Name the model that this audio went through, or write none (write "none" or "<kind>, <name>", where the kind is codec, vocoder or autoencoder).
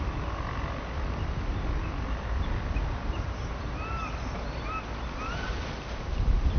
none